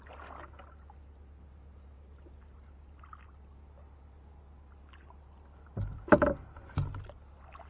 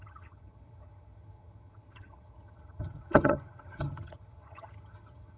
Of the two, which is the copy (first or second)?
second